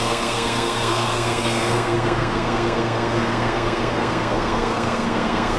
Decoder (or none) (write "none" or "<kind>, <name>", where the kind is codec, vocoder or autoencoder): codec, SNAC